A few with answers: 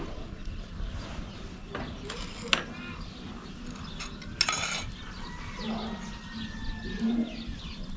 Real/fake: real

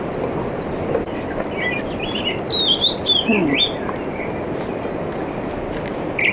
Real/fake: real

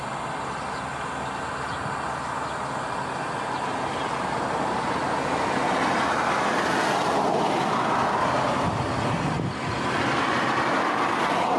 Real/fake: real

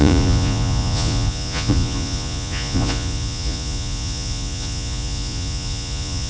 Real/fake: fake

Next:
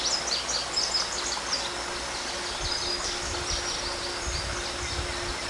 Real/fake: real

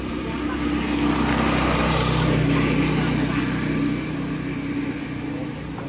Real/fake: real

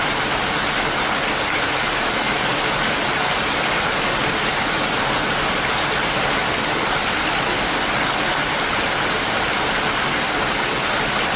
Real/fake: real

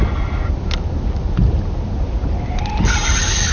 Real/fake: real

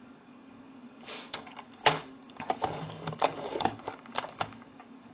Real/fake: fake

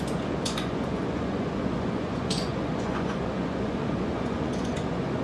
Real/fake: fake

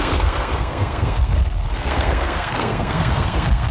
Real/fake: fake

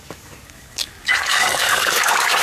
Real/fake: fake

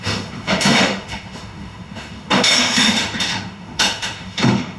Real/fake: fake